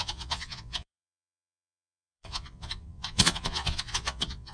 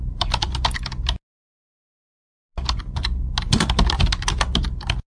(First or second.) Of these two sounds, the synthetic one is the first